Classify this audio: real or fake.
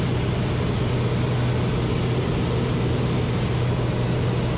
real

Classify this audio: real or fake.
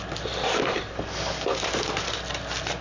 real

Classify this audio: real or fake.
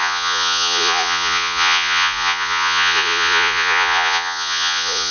fake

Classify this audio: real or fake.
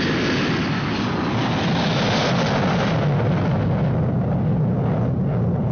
real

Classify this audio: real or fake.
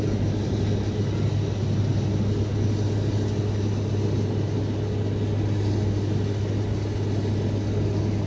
real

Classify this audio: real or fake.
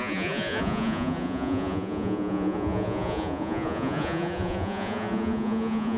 fake